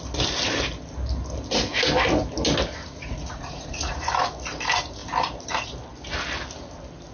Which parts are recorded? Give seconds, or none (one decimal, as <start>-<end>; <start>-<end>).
0.0-2.8; 4.1-7.1

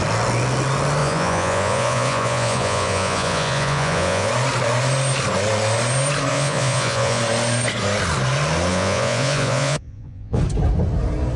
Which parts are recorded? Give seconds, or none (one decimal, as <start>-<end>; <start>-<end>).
0.0-1.0; 4.3-6.3; 7.2-8.7; 10.4-11.4